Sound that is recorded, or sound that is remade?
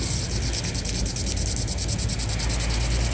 recorded